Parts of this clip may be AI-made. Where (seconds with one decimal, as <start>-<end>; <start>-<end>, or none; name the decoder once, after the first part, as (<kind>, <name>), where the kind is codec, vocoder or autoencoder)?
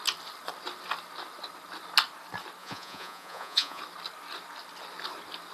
2.6-3.8 (vocoder, Vocos)